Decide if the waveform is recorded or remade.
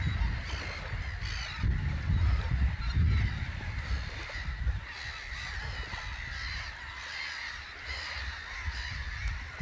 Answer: recorded